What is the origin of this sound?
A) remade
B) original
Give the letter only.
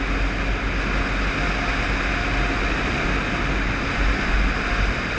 B